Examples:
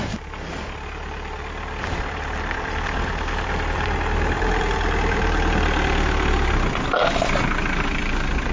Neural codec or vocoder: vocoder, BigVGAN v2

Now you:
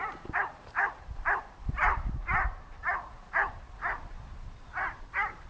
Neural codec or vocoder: vocoder, BigVGAN v2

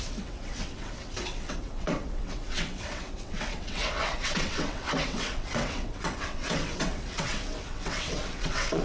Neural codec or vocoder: vocoder, WaveNeXt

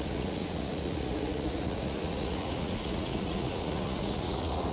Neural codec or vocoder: vocoder, Vocos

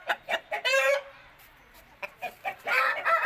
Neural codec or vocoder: vocoder, BigVGAN v2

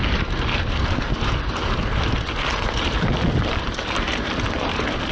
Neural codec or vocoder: none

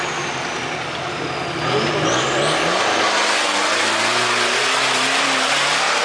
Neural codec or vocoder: none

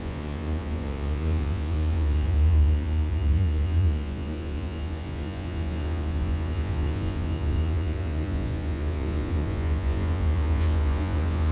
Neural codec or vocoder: vocoder, Vocos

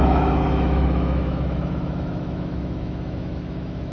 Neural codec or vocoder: autoencoder, DAC-VAE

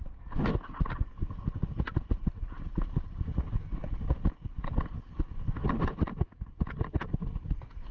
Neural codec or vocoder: none